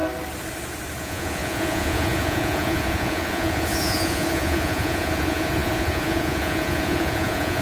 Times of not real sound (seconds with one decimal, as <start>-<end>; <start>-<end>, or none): 1.0-7.6